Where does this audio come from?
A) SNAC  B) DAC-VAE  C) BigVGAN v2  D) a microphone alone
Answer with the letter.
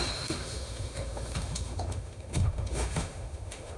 B